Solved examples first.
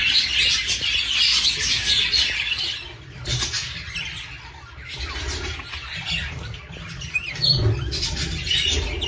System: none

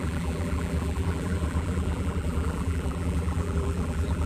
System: vocoder, BigVGAN v2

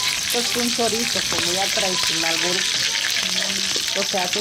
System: none